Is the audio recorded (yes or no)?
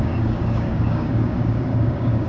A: no